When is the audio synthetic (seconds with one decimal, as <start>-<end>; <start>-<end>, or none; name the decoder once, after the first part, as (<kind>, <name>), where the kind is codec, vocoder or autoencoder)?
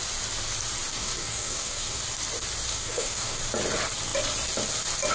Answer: 0.9-2.0 (codec, DAC); 2.7-3.4